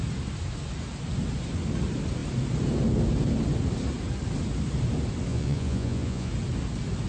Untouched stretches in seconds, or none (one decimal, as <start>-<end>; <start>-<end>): 0.0-5.3; 6.3-7.1